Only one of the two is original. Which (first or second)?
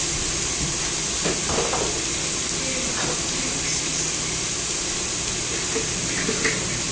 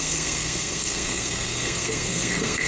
first